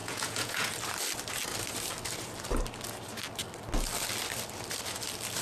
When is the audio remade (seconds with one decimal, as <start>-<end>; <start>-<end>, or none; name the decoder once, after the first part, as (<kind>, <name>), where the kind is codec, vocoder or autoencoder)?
0.0-0.7 (vocoder, Vocos)

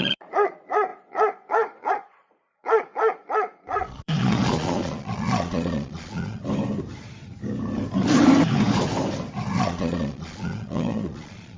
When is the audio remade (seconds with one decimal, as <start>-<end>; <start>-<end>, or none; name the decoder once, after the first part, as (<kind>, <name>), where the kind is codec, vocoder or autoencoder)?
0.0-6.4 (vocoder, Vocos); 9.6-11.6

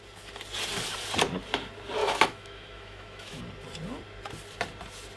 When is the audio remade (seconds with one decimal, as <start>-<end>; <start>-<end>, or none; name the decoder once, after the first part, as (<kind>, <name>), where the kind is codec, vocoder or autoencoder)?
2.0-3.4 (autoencoder, DAC-VAE)

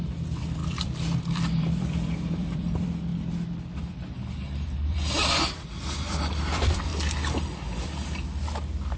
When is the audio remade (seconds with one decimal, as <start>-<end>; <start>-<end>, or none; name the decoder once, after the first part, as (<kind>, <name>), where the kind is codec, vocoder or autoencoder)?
0.0-3.1 (vocoder, BigVGAN v2); 3.8-6.9